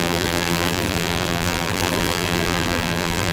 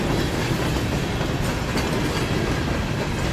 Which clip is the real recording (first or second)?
second